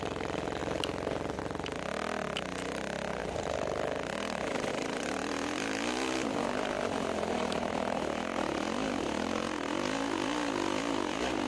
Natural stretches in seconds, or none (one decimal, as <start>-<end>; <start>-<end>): 0.0-11.5